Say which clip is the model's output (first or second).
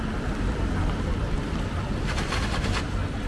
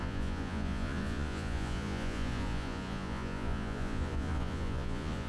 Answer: second